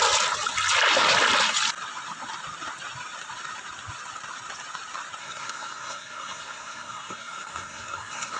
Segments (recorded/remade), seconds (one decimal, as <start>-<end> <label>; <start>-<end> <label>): 0.0-5.2 recorded; 5.2-8.4 remade